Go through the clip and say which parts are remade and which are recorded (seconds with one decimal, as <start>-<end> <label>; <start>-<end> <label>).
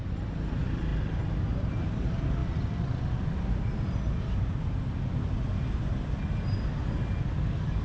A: 0.0-7.8 recorded